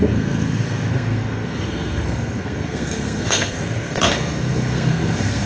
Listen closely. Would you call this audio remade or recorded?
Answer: remade